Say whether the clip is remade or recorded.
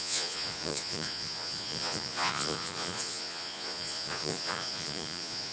remade